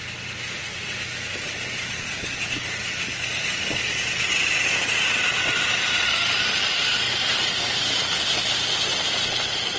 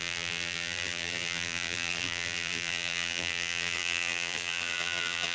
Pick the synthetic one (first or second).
second